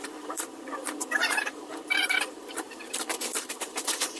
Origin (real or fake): fake